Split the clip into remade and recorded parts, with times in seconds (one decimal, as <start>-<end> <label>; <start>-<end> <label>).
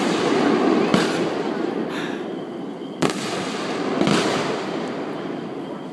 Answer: 0.0-0.9 recorded; 0.9-1.8 remade; 1.8-2.3 recorded; 2.3-3.2 remade; 3.2-5.9 recorded